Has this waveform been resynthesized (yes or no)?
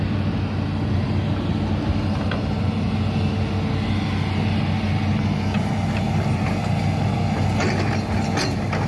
no